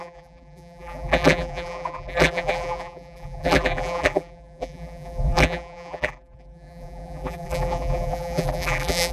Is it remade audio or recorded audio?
remade